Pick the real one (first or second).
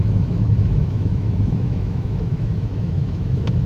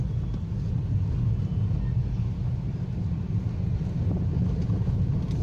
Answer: second